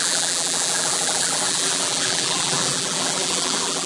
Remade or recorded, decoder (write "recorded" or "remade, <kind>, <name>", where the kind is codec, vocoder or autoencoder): remade, vocoder, BigVGAN v2